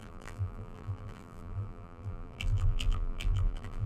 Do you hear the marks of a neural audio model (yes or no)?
yes